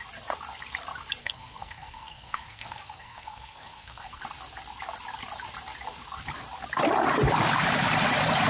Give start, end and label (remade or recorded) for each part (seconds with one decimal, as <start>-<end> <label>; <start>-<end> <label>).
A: 0.0-1.2 recorded; 1.2-4.2 remade; 4.2-8.5 recorded